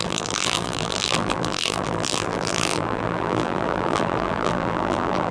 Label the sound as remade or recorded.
remade